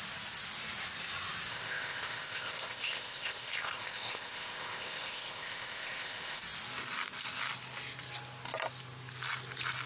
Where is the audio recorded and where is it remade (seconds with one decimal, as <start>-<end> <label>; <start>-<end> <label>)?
0.0-1.5 recorded; 1.5-6.4 remade; 6.4-9.9 recorded